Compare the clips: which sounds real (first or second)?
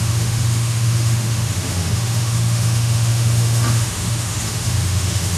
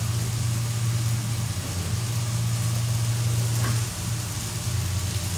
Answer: second